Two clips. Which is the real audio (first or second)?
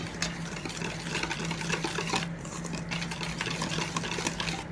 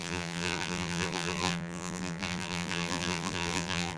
first